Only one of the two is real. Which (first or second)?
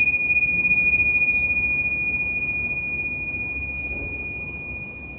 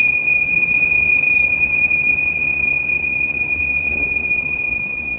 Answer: first